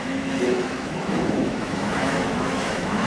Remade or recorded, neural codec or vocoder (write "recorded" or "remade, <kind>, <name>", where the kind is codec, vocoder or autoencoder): remade, autoencoder, DAC-VAE